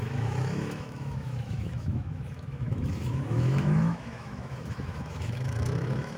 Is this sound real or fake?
fake